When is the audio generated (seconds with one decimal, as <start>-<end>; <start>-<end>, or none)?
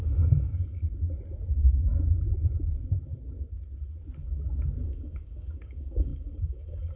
0.0-0.5; 1.5-1.9; 4.8-7.0